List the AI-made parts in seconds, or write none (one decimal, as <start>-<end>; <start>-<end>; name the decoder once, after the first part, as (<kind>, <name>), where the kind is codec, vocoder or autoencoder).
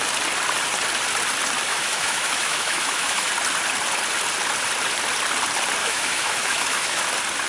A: 1.7-3.3 (autoencoder, DAC-VAE); 5.8-7.0